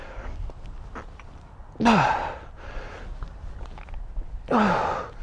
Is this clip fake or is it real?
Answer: real